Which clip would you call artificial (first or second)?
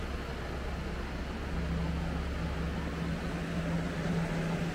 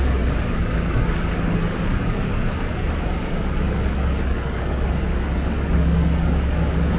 second